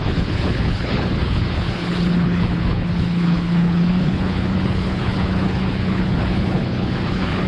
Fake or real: fake